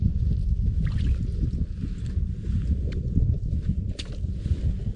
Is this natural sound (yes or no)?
no